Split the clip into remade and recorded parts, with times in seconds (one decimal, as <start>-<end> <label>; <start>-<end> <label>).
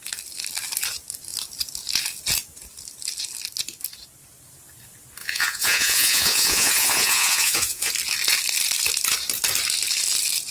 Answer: 0.0-5.2 recorded; 5.2-7.9 remade; 7.9-10.5 recorded